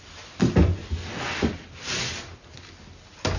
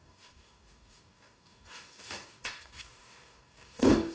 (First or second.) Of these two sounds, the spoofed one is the second